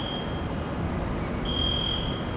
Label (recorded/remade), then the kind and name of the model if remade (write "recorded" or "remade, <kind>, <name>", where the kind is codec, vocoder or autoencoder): recorded